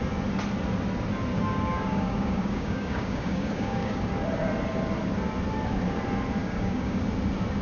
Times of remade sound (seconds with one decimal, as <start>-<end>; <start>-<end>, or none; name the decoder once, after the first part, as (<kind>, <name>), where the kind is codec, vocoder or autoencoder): 1.3-4.0 (codec, DAC); 6.4-7.0